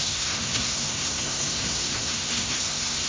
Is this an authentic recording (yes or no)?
no